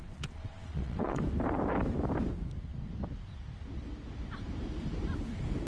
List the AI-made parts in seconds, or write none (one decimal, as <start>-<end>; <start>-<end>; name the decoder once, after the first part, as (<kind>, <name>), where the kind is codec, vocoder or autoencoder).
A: 0.0-1.2 (vocoder, WaveNeXt)